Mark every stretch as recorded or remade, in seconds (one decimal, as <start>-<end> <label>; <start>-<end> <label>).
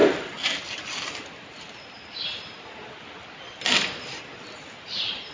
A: 0.0-5.3 recorded